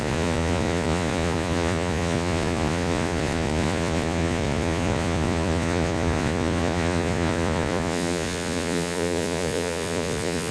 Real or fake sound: fake